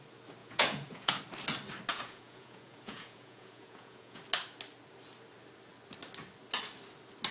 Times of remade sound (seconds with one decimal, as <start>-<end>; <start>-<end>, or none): 0.4-1.2; 1.9-4.2

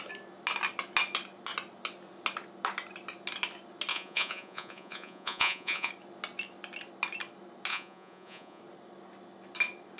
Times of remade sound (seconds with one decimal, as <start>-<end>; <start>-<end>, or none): 3.9-5.9; 7.7-8.6

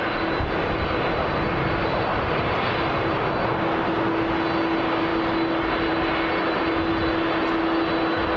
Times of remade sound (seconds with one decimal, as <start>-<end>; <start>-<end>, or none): 2.1-3.1

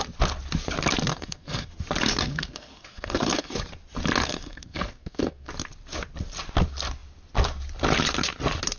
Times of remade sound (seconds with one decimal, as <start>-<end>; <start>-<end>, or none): 1.1-1.7; 2.2-3.5; 4.2-5.5

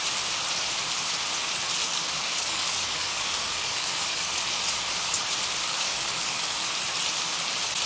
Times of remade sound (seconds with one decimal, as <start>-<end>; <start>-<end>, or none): 1.8-4.6; 5.6-6.7